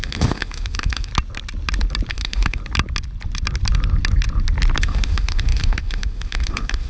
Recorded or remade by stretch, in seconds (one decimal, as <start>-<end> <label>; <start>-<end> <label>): 0.0-1.1 remade; 1.1-2.1 recorded; 2.1-2.6 remade; 2.6-4.8 recorded; 4.8-6.9 remade

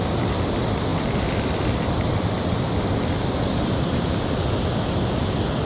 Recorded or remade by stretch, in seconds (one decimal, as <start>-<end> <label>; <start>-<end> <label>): 0.0-0.9 recorded; 0.9-4.3 remade; 4.3-5.7 recorded

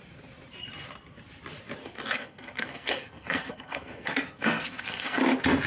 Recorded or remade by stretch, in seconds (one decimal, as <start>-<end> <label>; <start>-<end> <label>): 0.0-1.8 recorded; 1.8-5.2 remade; 5.2-5.7 recorded

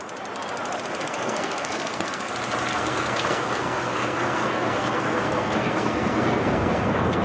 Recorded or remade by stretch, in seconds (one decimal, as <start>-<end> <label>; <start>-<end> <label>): 0.0-1.0 recorded; 1.0-2.3 remade; 2.3-2.7 recorded; 2.7-7.2 remade

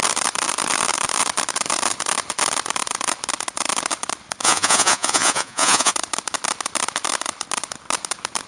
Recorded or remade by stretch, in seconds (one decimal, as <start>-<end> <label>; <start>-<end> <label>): 0.0-4.4 recorded; 4.4-5.9 remade; 5.9-8.5 recorded